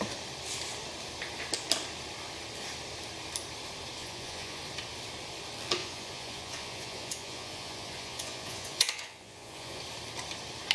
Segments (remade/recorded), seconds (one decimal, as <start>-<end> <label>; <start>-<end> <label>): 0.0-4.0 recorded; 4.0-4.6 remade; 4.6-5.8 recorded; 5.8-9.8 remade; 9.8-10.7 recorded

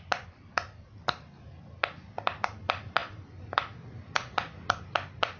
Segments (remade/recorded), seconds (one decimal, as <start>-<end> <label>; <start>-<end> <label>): 0.0-5.4 recorded

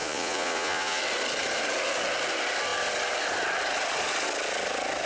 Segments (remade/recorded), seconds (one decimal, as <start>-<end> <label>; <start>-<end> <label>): 0.0-1.0 remade; 1.0-5.1 recorded